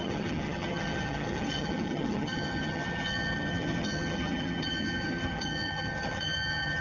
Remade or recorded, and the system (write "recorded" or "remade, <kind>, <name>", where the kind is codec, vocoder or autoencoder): remade, vocoder, HiFi-GAN